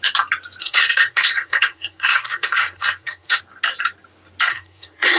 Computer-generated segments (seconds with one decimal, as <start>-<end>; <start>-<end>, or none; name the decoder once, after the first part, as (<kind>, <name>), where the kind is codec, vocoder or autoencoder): 0.6-3.4 (codec, SNAC); 4.5-5.2